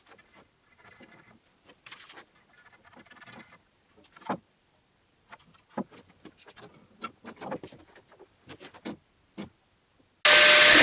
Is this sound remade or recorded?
recorded